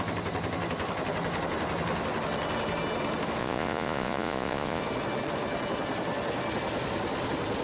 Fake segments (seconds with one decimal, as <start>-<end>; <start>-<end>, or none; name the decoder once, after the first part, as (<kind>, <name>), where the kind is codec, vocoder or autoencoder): 3.4-4.8 (vocoder, Vocos)